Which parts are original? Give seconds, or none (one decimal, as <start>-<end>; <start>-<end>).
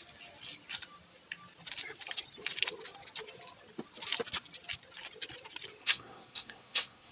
0.0-5.8